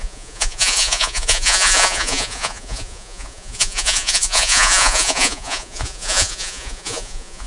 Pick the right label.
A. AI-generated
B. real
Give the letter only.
A